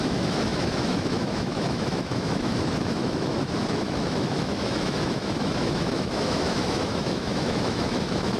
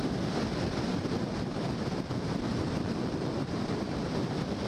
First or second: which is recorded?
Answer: second